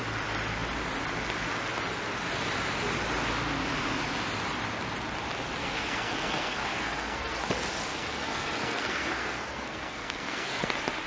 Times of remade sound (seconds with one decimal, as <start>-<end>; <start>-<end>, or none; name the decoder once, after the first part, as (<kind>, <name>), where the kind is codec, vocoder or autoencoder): 5.6-7.4 (codec, SNAC); 7.9-10.7

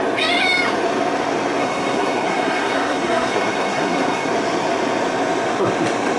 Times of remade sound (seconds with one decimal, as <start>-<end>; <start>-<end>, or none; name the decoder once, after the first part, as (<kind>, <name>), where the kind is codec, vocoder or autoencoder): 1.6-4.3 (codec, SNAC)

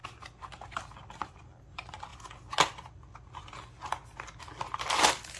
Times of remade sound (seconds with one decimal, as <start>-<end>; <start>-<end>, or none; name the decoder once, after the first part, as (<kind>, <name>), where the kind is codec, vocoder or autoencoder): none

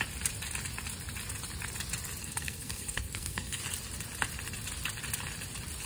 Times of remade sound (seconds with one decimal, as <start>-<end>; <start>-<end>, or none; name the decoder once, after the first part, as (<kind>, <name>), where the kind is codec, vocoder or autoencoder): 2.2-3.6 (codec, SNAC)

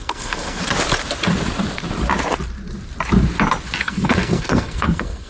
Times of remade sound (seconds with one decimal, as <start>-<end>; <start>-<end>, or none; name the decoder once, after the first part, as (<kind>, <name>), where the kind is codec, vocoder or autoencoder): 0.0-0.6 (codec, SNAC); 3.8-5.3

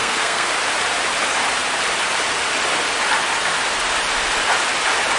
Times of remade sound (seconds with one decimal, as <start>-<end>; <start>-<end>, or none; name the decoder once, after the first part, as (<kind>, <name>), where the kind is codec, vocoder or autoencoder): 0.0-0.5 (codec, SNAC)

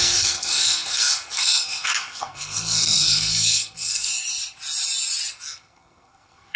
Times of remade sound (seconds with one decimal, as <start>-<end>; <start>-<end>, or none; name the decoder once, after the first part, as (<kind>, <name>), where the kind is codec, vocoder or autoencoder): 0.0-4.1 (codec, SNAC); 5.3-6.6